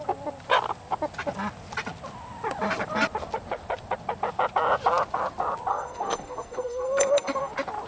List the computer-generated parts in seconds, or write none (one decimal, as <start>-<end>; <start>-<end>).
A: 5.7-7.5